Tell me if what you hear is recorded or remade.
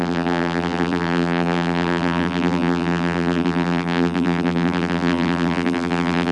remade